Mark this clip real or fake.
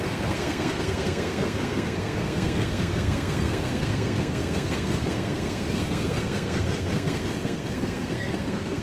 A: fake